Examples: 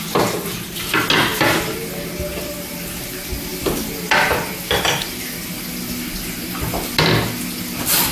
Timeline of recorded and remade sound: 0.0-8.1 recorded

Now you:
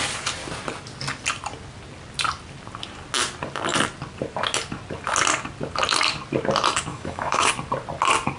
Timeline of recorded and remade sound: 0.0-6.9 recorded; 6.9-7.5 remade; 7.5-8.4 recorded

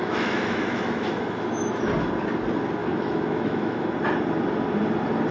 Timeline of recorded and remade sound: 0.0-1.9 remade; 1.9-2.8 recorded; 2.8-3.9 remade; 3.9-5.3 recorded

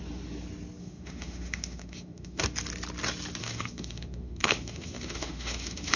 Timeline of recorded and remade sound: 0.0-0.8 recorded; 0.8-2.4 remade; 2.4-3.4 recorded; 3.4-6.0 remade

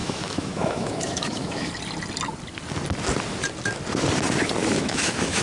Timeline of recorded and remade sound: 0.0-1.7 remade; 1.7-4.6 recorded; 4.6-5.4 remade

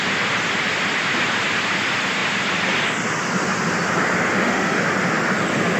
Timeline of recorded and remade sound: 0.0-4.3 recorded; 4.3-4.8 remade; 4.8-5.8 recorded

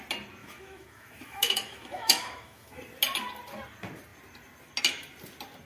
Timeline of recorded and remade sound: 0.0-0.4 recorded; 0.4-2.8 remade; 2.8-5.7 recorded